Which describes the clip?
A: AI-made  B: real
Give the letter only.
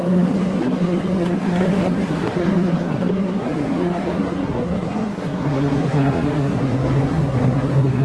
A